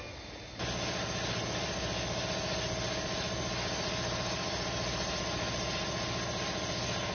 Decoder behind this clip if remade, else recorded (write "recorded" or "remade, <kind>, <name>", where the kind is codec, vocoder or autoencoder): recorded